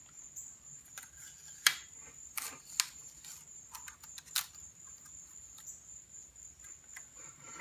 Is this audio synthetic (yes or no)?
no